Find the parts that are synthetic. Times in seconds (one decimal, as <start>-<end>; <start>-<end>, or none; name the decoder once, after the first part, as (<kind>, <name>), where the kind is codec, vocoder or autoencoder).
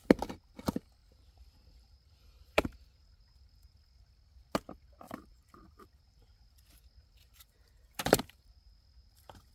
1.0-4.1 (vocoder, BigVGAN v2); 5.3-9.5